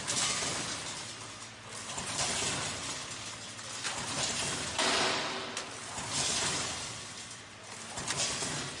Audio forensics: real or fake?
real